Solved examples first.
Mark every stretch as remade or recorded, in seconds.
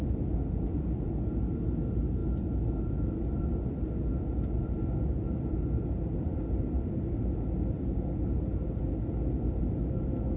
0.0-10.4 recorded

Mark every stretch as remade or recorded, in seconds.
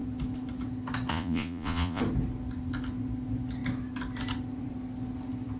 0.0-1.1 recorded; 1.1-2.0 remade; 2.0-5.6 recorded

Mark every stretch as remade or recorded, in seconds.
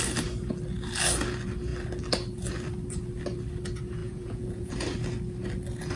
0.0-4.0 recorded; 4.0-4.7 remade; 4.7-6.0 recorded